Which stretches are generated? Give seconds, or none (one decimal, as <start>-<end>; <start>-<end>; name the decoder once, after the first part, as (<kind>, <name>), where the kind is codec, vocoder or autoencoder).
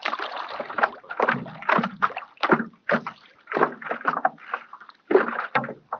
none